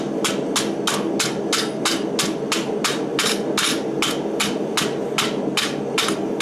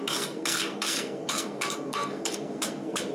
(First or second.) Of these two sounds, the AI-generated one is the second